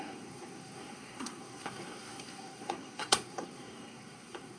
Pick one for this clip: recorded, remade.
remade